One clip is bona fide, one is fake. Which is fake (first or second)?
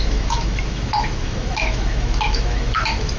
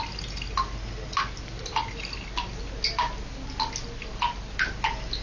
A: first